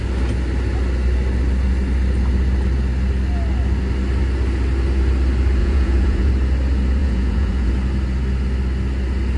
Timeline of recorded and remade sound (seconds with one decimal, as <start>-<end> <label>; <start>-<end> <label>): 0.0-5.6 recorded; 5.6-6.3 remade; 6.3-7.0 recorded; 7.0-7.7 remade; 7.7-9.4 recorded